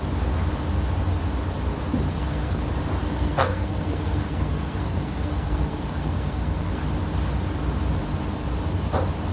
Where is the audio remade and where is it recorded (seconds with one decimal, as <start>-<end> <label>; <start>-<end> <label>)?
0.0-2.1 recorded; 2.1-2.6 remade; 2.6-3.0 recorded; 3.0-6.8 remade; 6.8-9.3 recorded